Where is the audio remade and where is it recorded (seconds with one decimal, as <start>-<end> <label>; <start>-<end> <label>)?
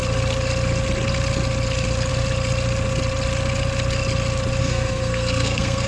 0.0-4.6 recorded; 4.6-5.9 remade